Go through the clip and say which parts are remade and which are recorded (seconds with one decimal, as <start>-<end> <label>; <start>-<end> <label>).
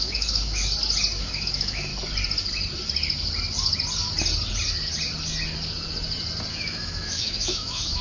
0.0-0.6 remade; 0.6-1.2 recorded; 1.2-1.9 remade; 1.9-6.5 recorded; 6.5-8.0 remade